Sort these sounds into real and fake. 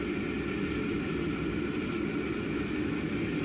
real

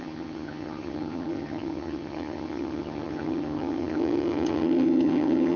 fake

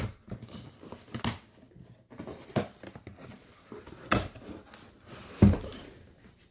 real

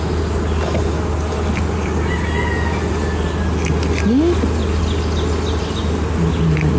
real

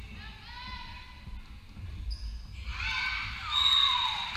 real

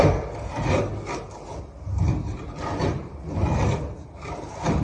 real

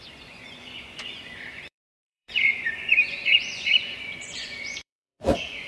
fake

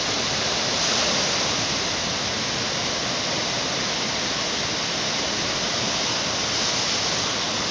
real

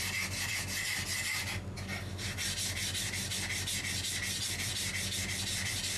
real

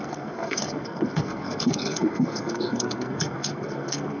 fake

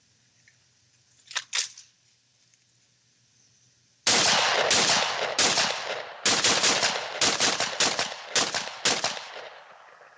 real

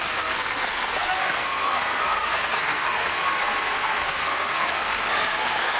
fake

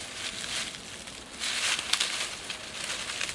real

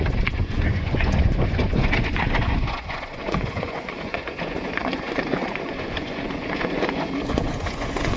fake